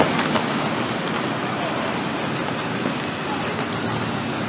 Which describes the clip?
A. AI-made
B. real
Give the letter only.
B